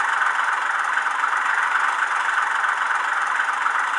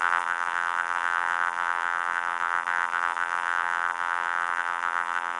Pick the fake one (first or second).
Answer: second